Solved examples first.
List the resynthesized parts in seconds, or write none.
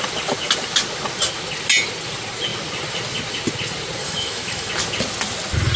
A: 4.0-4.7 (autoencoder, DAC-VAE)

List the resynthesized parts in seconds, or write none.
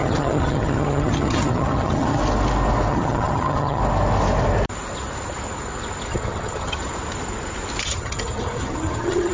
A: 0.0-2.2 (vocoder, HiFi-GAN); 2.9-3.8; 6.1-6.8; 7.8-9.3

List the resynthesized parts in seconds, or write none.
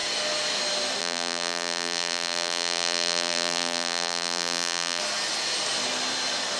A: 1.0-5.0 (vocoder, BigVGAN v2)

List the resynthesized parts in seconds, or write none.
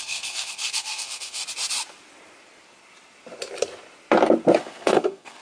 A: 0.0-1.4 (codec, SNAC); 4.6-5.4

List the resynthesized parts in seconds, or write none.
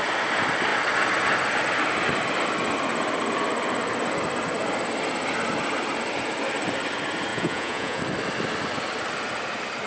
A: 7.3-8.0 (vocoder, Vocos)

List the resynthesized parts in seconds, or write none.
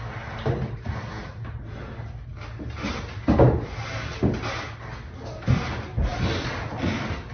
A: none